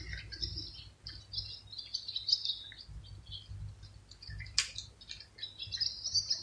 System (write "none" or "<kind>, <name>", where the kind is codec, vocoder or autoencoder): none